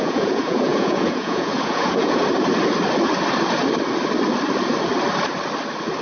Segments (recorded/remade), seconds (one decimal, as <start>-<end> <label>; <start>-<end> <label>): 0.0-2.2 remade; 2.2-6.0 recorded

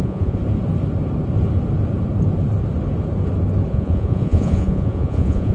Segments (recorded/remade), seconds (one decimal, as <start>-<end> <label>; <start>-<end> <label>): 0.0-0.4 remade; 0.4-3.7 recorded; 3.7-5.5 remade

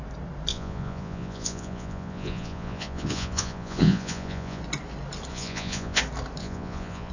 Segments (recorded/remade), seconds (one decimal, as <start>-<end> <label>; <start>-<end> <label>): 0.0-0.5 recorded; 0.5-4.6 remade; 4.6-5.3 recorded; 5.3-6.0 remade; 6.0-6.4 recorded; 6.4-7.1 remade

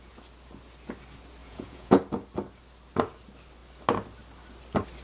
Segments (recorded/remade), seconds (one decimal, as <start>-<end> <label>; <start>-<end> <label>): 0.0-1.4 recorded; 1.4-2.0 remade; 2.0-5.0 recorded

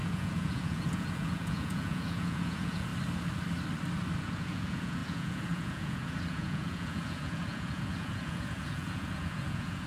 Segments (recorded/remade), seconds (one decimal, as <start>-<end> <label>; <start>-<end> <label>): 0.0-2.9 remade; 2.9-4.2 recorded; 4.2-9.9 remade

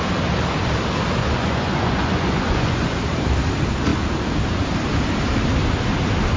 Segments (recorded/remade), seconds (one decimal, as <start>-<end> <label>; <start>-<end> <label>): 0.0-1.2 recorded; 1.2-3.0 remade; 3.0-6.4 recorded

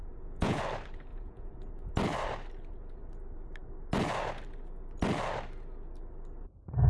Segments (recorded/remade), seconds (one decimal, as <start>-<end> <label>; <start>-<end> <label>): 0.0-0.6 remade; 0.6-1.1 recorded; 1.1-1.7 remade; 1.7-6.9 recorded

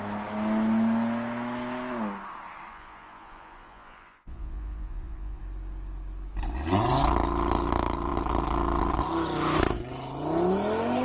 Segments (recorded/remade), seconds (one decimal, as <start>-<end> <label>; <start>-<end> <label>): 0.0-2.7 recorded; 2.7-5.4 remade; 5.4-11.0 recorded